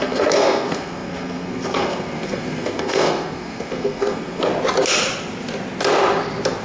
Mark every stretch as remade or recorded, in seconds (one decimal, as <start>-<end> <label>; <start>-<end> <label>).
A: 0.0-4.5 remade; 4.5-6.6 recorded